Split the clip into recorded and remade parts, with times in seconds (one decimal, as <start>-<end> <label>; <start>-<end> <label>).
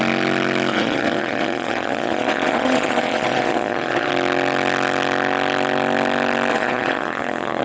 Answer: 0.0-0.7 recorded; 0.7-4.1 remade; 4.1-6.5 recorded; 6.5-7.6 remade